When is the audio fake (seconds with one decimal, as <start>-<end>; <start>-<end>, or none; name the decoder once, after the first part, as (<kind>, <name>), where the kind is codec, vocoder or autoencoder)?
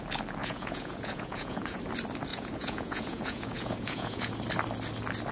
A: 0.4-1.8 (vocoder, Vocos); 2.3-4.3